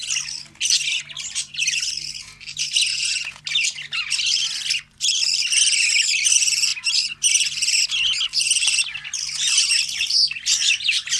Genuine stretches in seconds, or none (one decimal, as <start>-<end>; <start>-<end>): 0.0-2.9; 3.4-11.2